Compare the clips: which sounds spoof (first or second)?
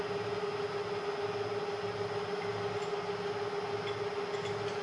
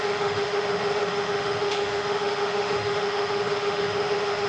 second